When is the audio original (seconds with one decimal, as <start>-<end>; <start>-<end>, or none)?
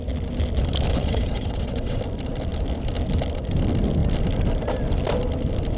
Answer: 0.0-0.9; 2.0-5.8